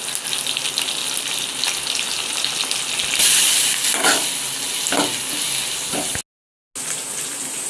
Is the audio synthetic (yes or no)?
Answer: no